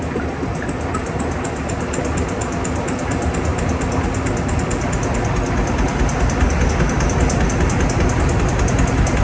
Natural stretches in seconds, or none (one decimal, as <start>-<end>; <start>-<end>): 0.0-9.2